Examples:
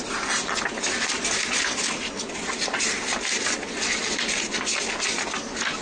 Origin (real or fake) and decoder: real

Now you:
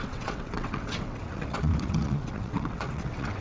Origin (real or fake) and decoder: fake, vocoder, WaveNeXt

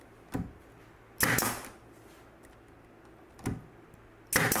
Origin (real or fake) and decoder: real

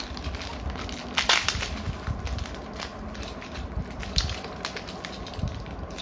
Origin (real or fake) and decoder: real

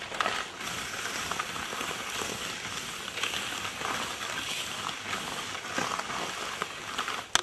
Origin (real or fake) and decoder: real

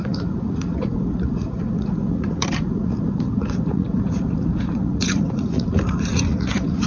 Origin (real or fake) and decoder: fake, vocoder, Vocos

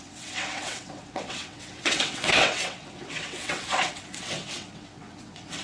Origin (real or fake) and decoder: fake, vocoder, WaveNeXt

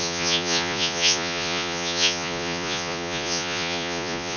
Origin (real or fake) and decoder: fake, vocoder, Vocos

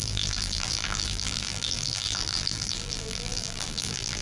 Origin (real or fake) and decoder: fake, vocoder, BigVGAN v2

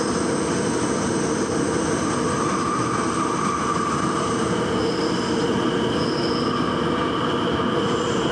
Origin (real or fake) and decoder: real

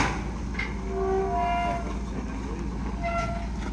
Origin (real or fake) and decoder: real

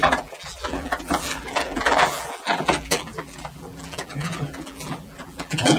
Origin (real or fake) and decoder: fake, vocoder, BigVGAN v2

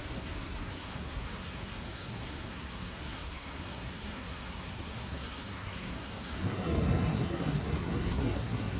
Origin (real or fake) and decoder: fake, codec, SNAC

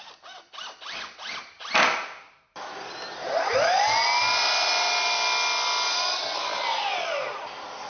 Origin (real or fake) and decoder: real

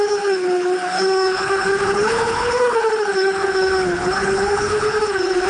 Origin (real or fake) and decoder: fake, codec, HILCodec